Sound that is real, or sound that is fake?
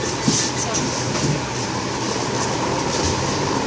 real